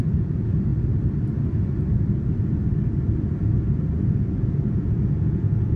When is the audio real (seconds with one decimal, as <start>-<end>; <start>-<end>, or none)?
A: 0.7-4.0